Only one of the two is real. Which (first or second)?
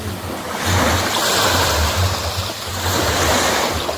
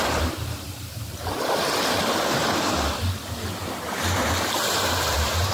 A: first